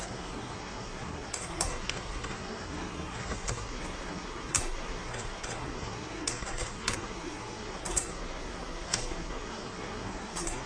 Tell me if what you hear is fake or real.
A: fake